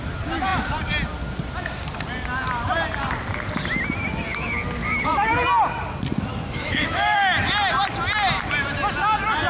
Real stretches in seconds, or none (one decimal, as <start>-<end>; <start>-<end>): 0.0-4.8; 5.3-6.3; 7.2-9.5